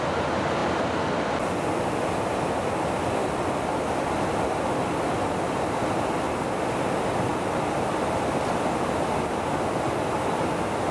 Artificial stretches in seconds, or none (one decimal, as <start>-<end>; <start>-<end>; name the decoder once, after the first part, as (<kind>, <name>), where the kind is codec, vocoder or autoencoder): none